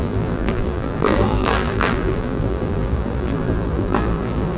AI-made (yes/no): yes